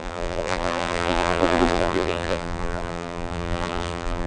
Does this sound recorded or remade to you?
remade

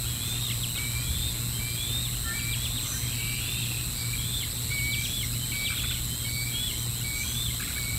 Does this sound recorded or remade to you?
recorded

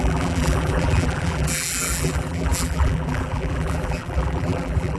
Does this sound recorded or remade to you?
remade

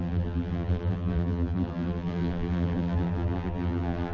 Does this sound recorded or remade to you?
remade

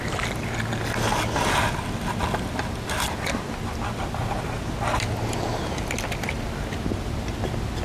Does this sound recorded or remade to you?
recorded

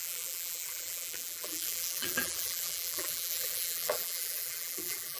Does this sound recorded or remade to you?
remade